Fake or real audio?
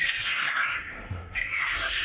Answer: fake